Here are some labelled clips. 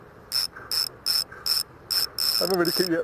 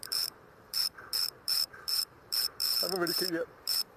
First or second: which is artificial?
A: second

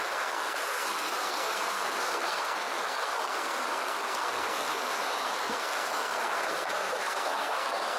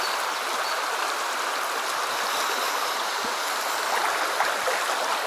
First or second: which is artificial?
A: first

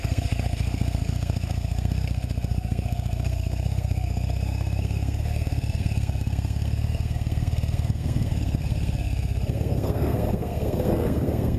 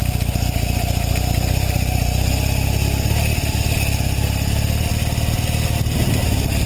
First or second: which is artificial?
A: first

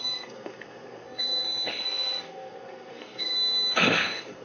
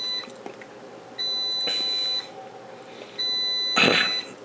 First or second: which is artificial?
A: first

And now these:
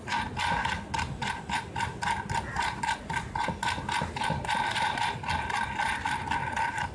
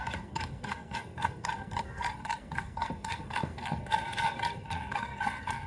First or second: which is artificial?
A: second